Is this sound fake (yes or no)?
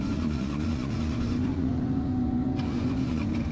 yes